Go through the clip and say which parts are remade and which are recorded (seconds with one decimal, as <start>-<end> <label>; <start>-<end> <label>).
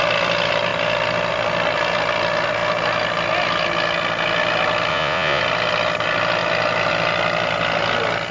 0.0-4.9 recorded; 4.9-5.4 remade; 5.4-8.3 recorded